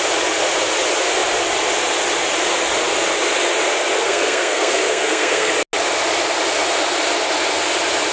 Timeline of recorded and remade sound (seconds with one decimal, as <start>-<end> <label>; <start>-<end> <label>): 0.0-4.0 recorded; 4.0-5.5 remade; 5.5-8.1 recorded